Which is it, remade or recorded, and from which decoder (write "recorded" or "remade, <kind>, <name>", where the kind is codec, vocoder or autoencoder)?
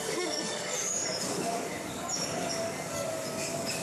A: remade, codec, DAC